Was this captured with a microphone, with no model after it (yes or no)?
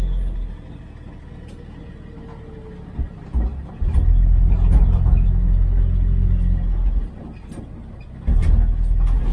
yes